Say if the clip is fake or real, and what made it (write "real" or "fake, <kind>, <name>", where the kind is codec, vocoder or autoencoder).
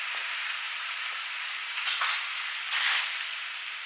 real